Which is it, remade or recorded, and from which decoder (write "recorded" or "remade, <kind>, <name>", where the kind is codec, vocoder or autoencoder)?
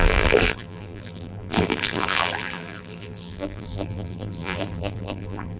remade, vocoder, BigVGAN v2